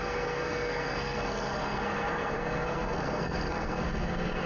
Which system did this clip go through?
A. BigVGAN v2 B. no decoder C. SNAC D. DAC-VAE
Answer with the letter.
C